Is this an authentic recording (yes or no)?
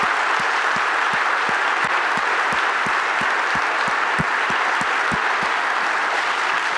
yes